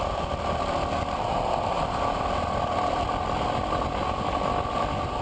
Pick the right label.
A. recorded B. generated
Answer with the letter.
A